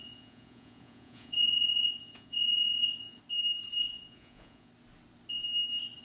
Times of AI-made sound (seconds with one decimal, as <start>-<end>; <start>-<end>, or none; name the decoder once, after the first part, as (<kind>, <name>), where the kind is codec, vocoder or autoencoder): 0.0-3.2 (vocoder, Vocos); 3.8-4.7